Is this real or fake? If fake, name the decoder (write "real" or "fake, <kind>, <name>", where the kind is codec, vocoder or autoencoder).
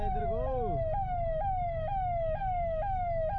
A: real